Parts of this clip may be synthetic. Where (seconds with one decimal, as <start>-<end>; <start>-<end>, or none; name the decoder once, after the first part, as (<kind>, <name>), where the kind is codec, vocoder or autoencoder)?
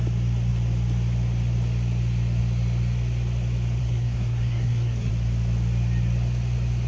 3.8-5.1 (codec, SNAC)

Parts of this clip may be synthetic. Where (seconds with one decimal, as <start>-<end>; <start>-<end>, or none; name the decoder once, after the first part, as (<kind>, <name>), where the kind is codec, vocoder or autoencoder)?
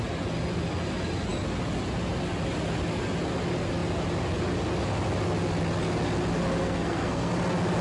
6.6-7.3 (codec, SNAC)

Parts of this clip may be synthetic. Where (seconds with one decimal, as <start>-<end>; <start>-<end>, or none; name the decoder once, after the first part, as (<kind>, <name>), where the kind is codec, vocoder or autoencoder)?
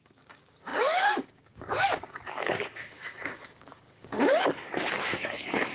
0.0-5.7 (codec, DAC)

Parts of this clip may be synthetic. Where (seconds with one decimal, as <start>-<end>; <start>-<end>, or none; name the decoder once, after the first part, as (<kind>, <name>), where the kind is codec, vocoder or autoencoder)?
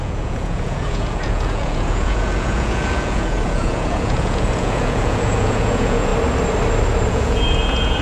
0.0-6.1 (vocoder, Vocos); 7.1-8.0